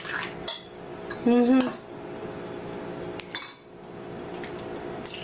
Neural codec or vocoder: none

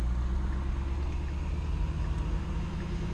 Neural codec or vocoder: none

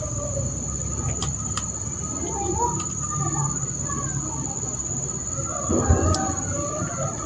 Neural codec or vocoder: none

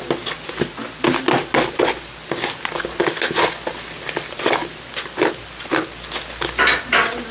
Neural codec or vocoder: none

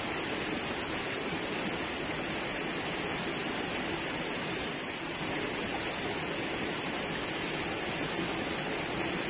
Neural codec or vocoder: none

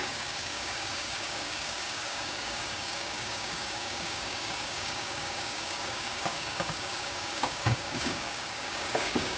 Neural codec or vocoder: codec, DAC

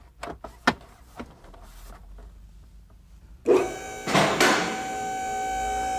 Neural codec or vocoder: none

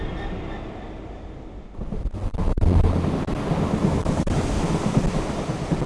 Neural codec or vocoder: none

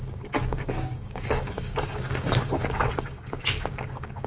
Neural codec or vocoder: codec, DAC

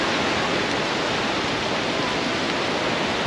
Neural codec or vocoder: none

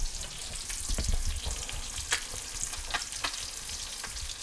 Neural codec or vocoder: none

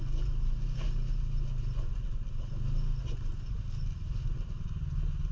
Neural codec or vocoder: none